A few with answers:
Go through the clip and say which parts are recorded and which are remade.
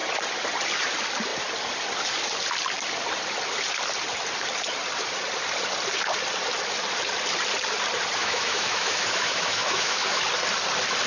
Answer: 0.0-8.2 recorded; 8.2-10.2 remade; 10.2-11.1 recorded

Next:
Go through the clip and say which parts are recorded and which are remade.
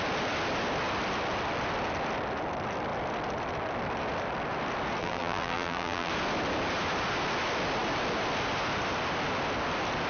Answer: 0.0-5.0 recorded; 5.0-6.1 remade; 6.1-10.1 recorded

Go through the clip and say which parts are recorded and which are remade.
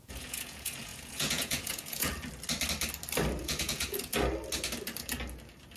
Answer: 0.0-2.1 remade; 2.1-3.4 recorded; 3.4-4.1 remade; 4.1-5.8 recorded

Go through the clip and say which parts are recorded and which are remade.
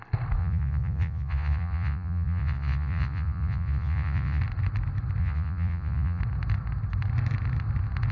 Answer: 0.0-0.4 recorded; 0.4-4.4 remade; 4.4-5.2 recorded; 5.2-6.2 remade; 6.2-8.1 recorded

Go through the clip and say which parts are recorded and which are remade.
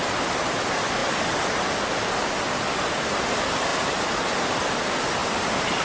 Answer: 0.0-1.0 remade; 1.0-2.8 recorded; 2.8-3.7 remade; 3.7-4.4 recorded; 4.4-5.8 remade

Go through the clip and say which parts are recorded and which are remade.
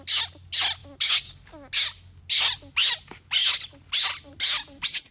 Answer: 0.0-5.1 recorded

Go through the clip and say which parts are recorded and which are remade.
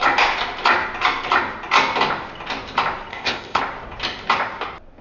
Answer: 0.0-3.1 recorded; 3.1-3.6 remade; 3.6-5.0 recorded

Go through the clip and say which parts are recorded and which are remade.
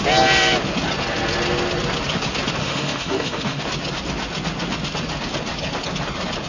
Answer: 0.0-2.6 recorded; 2.6-3.6 remade; 3.6-6.5 recorded